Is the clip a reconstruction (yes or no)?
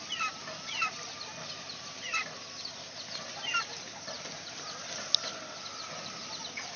no